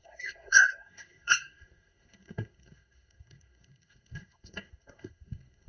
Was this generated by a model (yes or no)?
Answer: yes